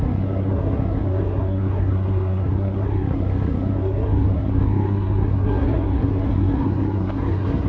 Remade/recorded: remade